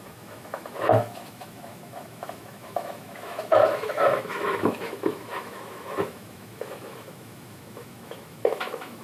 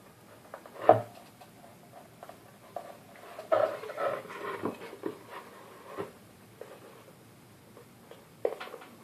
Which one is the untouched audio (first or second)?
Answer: second